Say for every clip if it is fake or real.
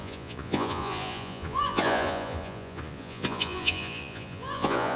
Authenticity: fake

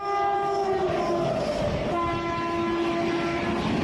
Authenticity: real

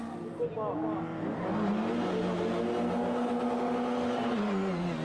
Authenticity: real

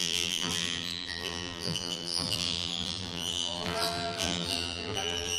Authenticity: fake